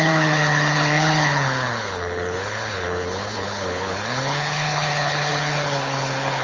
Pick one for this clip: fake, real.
fake